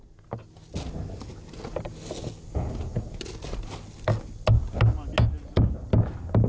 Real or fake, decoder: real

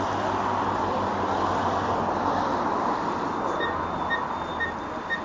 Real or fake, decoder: real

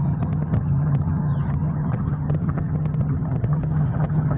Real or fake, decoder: fake, vocoder, HiFi-GAN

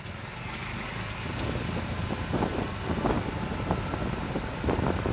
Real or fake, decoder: real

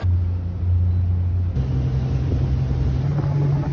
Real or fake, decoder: real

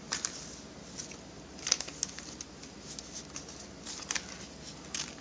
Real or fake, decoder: real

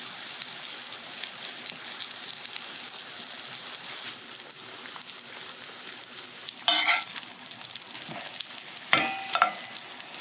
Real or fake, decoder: real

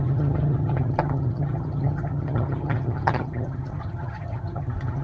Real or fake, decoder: fake, vocoder, HiFi-GAN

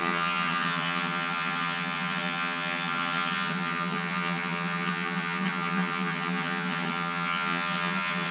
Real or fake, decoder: fake, vocoder, HiFi-GAN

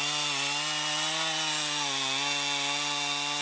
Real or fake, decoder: real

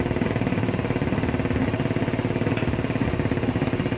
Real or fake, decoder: real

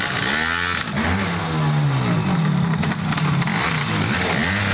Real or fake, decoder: real